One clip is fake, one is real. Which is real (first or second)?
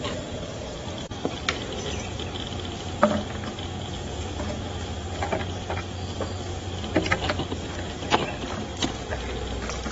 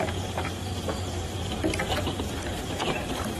first